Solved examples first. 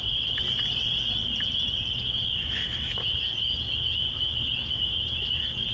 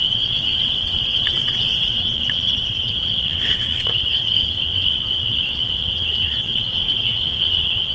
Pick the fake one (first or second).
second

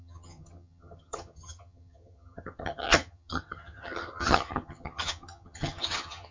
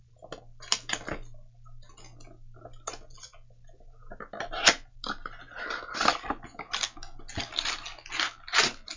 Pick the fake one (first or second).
first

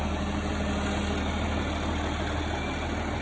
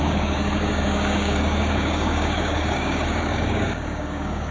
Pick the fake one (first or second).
second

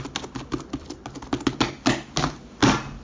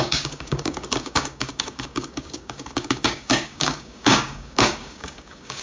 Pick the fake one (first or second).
second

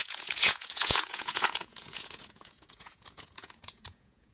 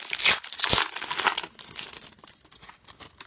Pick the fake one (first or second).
first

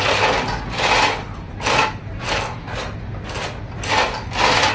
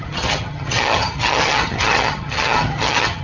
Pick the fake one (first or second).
second